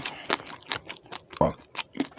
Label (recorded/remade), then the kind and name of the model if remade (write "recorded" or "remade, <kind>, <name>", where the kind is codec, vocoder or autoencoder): recorded